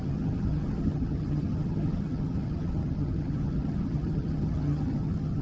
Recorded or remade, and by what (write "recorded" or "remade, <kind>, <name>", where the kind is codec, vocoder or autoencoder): remade, vocoder, HiFi-GAN